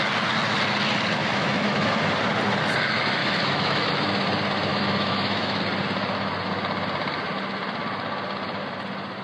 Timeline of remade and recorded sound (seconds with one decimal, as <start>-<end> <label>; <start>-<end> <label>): 0.0-1.2 recorded; 1.2-1.9 remade; 1.9-3.2 recorded; 3.2-3.9 remade; 3.9-4.7 recorded; 4.7-5.6 remade; 5.6-9.2 recorded